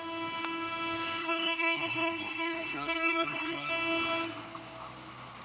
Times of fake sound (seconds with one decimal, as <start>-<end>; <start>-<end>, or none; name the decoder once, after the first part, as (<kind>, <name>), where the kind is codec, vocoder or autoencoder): 1.2-3.7 (codec, SNAC)